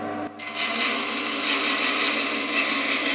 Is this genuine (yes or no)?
yes